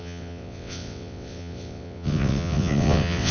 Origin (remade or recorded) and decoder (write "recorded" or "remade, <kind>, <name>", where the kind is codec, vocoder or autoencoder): remade, vocoder, WaveNeXt